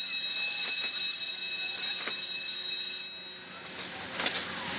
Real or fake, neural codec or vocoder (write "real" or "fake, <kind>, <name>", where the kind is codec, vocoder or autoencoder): real